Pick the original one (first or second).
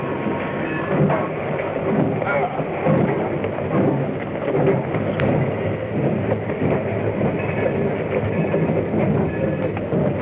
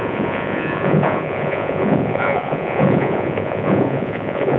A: first